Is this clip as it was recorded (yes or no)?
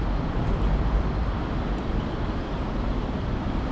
yes